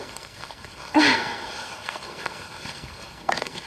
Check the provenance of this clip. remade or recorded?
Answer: remade